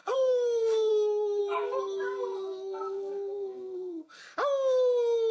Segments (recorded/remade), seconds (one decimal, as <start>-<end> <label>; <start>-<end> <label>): 0.0-0.9 remade; 0.9-1.4 recorded; 1.4-4.2 remade; 4.2-5.3 recorded